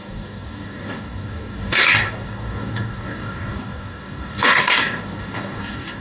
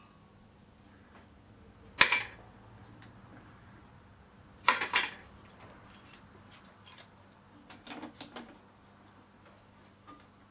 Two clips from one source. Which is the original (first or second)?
second